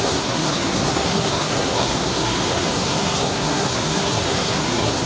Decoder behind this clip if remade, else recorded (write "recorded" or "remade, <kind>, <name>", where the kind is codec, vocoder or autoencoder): remade, codec, SNAC